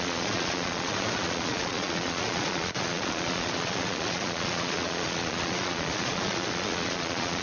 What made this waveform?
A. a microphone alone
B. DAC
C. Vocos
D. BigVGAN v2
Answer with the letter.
C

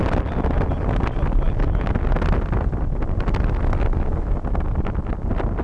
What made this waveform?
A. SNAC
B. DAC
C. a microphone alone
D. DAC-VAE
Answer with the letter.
C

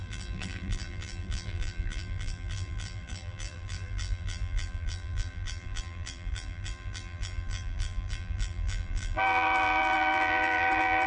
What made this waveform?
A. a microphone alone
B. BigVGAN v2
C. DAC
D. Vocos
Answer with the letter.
B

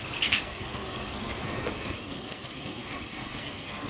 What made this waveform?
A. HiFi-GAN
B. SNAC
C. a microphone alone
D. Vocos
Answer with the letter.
B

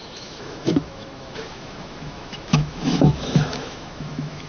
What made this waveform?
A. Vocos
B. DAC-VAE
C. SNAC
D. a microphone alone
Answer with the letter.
B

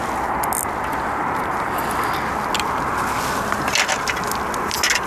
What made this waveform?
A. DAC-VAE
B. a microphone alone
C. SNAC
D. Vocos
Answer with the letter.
B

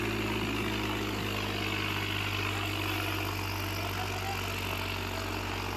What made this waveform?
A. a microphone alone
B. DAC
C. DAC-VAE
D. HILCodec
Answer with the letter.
A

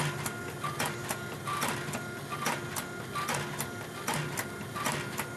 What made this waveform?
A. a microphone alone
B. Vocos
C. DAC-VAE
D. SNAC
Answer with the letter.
A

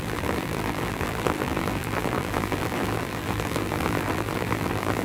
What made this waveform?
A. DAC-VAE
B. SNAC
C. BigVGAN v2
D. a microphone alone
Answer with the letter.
C